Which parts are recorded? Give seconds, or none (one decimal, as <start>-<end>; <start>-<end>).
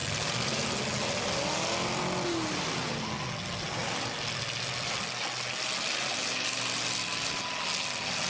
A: 0.0-8.3